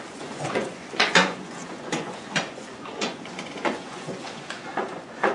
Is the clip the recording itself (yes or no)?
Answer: no